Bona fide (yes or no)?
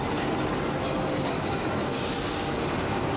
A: yes